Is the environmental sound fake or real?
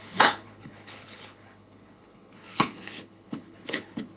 fake